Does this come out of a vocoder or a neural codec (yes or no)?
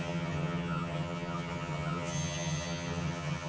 yes